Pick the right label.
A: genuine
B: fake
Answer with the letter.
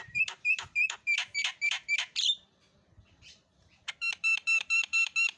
B